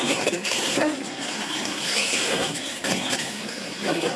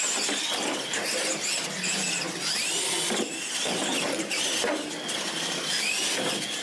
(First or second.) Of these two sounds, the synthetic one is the first